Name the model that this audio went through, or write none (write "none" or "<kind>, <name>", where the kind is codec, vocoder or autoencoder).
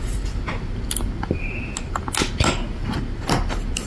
none